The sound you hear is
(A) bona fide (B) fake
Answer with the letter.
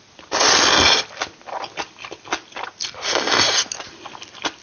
A